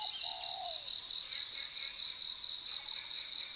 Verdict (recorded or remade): recorded